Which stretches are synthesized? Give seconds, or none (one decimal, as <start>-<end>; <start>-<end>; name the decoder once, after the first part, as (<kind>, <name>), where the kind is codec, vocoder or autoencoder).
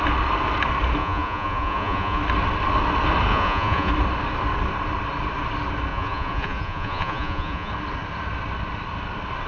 1.0-2.2 (vocoder, Vocos); 3.3-3.9; 5.9-7.7